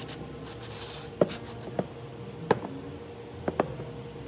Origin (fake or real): real